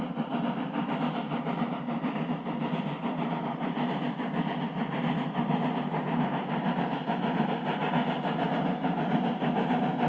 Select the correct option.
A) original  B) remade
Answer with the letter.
A